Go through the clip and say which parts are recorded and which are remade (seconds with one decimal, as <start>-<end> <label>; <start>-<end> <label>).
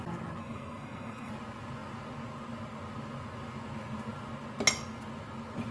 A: 0.0-0.4 recorded; 0.4-1.3 remade; 1.3-5.7 recorded